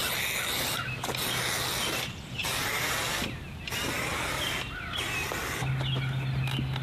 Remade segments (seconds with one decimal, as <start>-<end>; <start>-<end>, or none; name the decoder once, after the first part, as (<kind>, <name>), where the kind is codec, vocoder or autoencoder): none